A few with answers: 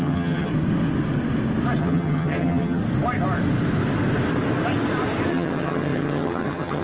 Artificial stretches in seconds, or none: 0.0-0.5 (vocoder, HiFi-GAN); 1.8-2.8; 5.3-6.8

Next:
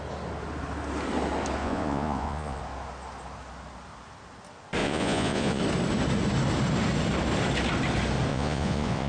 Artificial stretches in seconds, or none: 1.6-2.6 (vocoder, Vocos); 4.8-5.6; 8.3-9.1

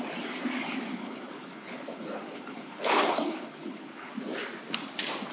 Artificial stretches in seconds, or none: 0.9-4.1 (codec, HILCodec)